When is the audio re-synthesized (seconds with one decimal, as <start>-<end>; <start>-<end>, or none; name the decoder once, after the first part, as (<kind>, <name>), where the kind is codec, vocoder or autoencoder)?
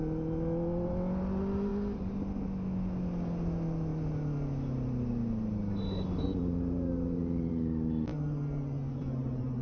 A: none